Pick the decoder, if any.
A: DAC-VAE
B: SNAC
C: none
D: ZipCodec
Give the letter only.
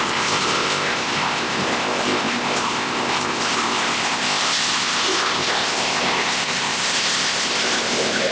D